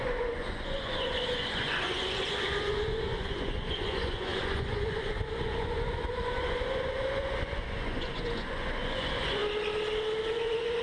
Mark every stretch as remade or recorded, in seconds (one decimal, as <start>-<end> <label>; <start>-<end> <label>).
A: 0.0-9.4 remade; 9.4-10.3 recorded; 10.3-10.8 remade